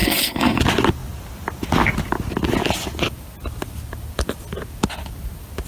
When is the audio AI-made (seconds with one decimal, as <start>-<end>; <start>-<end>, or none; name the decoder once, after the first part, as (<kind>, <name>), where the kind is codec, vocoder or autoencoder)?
0.0-0.6 (codec, SNAC)

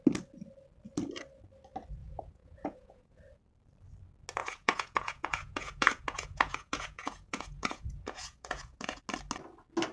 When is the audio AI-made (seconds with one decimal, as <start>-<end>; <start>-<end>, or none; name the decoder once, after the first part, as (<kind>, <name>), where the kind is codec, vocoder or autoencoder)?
2.0-3.2 (vocoder, Vocos); 4.4-9.0

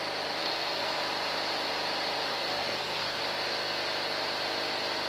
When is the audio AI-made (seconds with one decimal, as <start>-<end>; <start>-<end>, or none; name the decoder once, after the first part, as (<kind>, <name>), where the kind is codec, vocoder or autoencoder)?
0.4-1.0 (codec, SNAC); 2.3-3.2

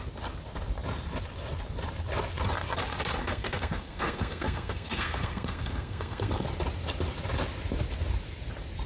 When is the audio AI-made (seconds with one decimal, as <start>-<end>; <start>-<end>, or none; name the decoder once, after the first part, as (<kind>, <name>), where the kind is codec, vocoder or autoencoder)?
3.2-6.3 (codec, SNAC)

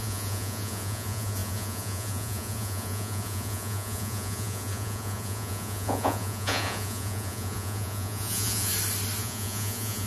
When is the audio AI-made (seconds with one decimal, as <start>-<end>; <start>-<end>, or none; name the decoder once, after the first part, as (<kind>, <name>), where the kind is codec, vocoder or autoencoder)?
0.0-8.7 (vocoder, Vocos); 9.2-10.1